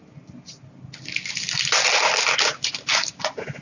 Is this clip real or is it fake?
real